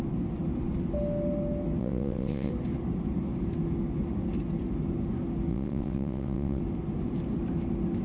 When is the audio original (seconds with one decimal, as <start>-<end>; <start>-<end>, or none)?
0.0-1.8; 2.5-5.5; 6.6-8.0